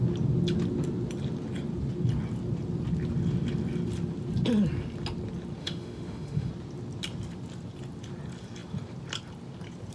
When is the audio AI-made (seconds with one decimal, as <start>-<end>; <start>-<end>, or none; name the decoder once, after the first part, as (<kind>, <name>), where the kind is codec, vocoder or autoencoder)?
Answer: 5.6-6.5 (autoencoder, DAC-VAE)